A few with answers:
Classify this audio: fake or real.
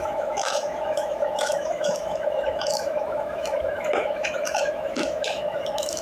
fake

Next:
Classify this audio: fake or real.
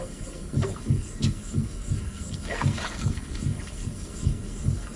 fake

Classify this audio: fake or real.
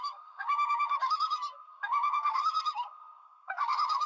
fake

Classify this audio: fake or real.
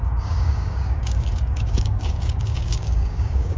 fake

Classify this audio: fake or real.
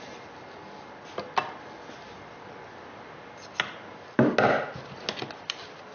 real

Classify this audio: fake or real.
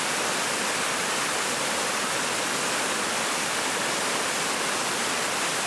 real